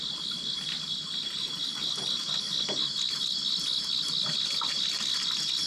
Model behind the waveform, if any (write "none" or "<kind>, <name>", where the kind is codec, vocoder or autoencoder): none